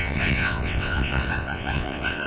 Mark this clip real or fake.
fake